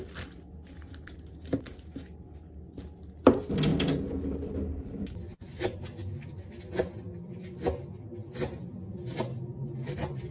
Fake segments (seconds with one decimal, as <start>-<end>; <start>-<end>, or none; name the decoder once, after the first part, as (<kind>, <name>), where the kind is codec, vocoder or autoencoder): none